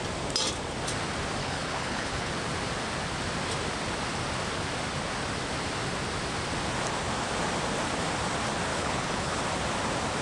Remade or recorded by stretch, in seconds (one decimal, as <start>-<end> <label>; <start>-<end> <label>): 0.0-1.4 recorded; 1.4-2.3 remade; 2.3-8.7 recorded; 8.7-9.4 remade; 9.4-10.2 recorded